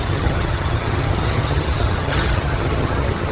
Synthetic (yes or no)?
yes